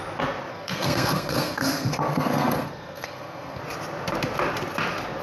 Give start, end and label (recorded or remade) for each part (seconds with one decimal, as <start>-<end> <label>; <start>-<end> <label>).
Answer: 0.0-0.5 recorded; 0.5-3.6 remade; 3.6-5.2 recorded

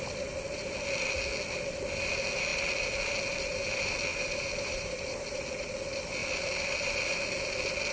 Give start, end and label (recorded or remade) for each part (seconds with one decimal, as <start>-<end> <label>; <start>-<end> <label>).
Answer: 0.0-2.5 recorded; 2.5-3.1 remade; 3.1-4.1 recorded; 4.1-5.7 remade; 5.7-6.2 recorded; 6.2-7.5 remade; 7.5-7.9 recorded

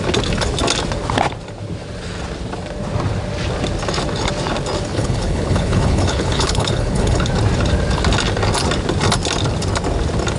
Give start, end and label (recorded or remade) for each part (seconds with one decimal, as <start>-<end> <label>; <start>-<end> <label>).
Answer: 0.0-4.9 recorded; 4.9-7.3 remade; 7.3-10.4 recorded